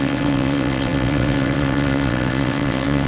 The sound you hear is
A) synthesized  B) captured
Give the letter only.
A